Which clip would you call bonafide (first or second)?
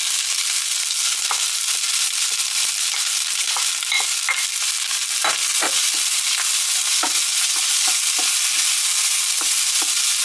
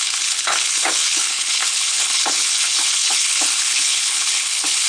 first